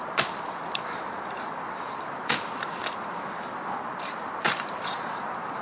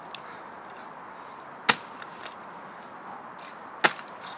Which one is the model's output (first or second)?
first